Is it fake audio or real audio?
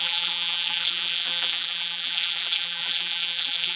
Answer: fake